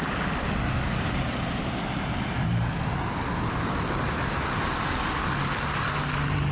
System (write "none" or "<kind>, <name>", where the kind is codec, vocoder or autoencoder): none